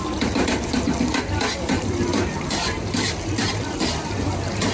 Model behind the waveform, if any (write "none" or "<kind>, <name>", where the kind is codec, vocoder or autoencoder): vocoder, BigVGAN v2